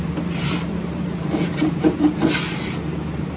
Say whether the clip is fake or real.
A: fake